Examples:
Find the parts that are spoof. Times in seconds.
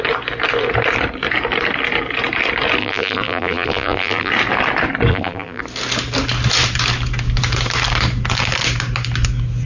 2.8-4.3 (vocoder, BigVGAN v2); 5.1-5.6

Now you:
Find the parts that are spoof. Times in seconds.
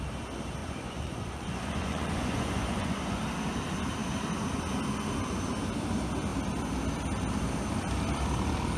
0.6-3.2 (vocoder, Vocos)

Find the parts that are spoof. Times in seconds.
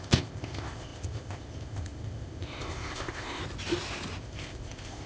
0.0-3.4 (codec, ZipCodec); 4.2-5.1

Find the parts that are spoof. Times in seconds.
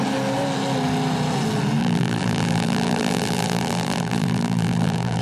1.8-5.2 (vocoder, BigVGAN v2)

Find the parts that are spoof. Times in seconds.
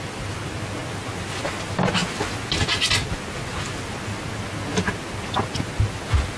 none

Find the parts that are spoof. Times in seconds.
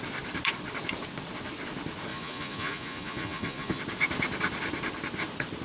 2.1-3.8 (vocoder, Vocos)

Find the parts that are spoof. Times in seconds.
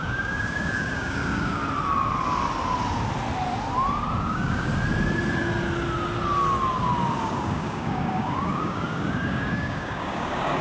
0.0-1.6 (codec, DAC); 4.2-4.7; 7.2-10.6